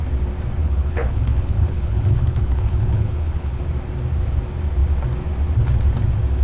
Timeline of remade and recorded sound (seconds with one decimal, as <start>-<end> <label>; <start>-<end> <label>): 0.0-0.6 recorded; 0.6-3.6 remade; 3.6-6.4 recorded